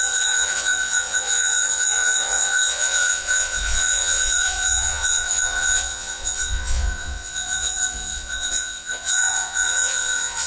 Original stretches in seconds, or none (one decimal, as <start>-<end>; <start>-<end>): none